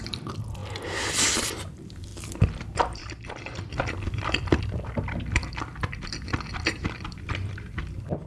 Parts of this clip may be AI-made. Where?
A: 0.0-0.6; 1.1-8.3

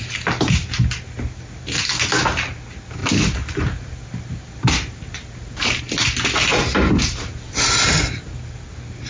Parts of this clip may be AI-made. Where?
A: 3.0-5.8; 6.5-8.7

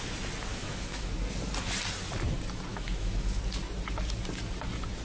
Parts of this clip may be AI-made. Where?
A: 0.5-1.1; 2.7-3.4